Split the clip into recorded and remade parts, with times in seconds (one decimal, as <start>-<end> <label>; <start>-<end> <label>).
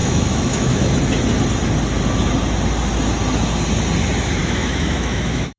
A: 0.0-0.9 remade; 0.9-4.4 recorded; 4.4-5.6 remade